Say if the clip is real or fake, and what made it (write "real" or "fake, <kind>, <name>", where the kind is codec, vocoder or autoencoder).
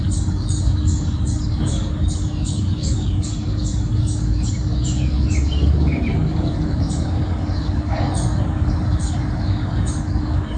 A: fake, codec, DAC